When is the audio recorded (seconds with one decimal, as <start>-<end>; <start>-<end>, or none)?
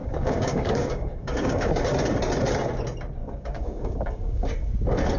1.8-3.2; 4.5-5.2